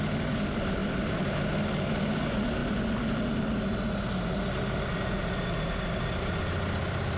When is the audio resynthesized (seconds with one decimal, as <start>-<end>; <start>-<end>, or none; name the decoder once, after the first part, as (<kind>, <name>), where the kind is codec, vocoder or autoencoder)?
none

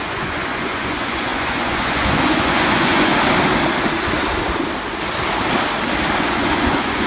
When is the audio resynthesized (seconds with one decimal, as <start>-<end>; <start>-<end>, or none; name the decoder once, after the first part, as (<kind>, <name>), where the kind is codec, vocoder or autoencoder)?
0.0-3.1 (vocoder, Vocos); 6.2-7.1

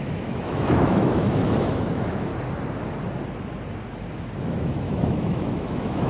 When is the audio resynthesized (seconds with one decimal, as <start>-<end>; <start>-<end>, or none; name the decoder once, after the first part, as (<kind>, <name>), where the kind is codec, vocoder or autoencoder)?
0.0-2.3 (autoencoder, DAC-VAE); 4.4-6.1

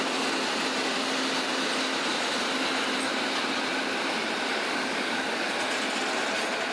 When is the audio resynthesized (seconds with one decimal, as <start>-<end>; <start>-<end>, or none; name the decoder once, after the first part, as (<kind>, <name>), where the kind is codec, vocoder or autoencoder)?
4.5-5.5 (codec, DAC)

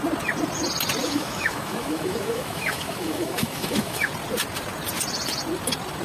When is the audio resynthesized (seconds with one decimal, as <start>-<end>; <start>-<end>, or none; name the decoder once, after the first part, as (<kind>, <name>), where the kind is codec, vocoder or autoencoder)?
1.0-4.1 (autoencoder, DAC-VAE)

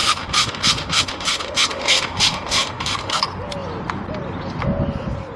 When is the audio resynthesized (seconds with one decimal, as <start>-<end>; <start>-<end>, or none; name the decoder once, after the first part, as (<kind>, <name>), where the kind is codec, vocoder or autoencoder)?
0.0-3.2 (autoencoder, DAC-VAE)